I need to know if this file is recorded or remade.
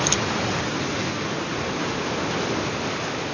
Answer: recorded